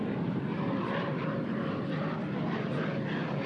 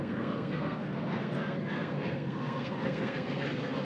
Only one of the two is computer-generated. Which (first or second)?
second